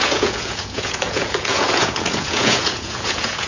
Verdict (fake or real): fake